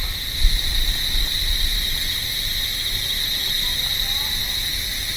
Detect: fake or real real